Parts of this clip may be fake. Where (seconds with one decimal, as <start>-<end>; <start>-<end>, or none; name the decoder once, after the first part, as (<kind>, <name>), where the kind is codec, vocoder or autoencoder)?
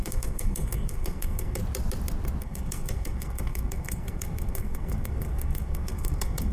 0.0-1.6 (codec, SNAC); 2.4-6.5